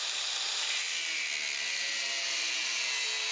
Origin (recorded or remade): recorded